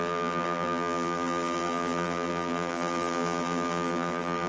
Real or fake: fake